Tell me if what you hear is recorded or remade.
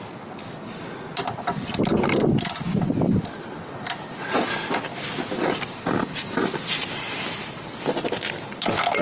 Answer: recorded